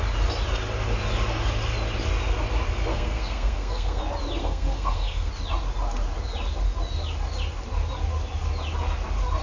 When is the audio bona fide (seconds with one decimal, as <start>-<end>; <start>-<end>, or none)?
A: 0.0-2.9; 4.0-4.4; 5.3-9.4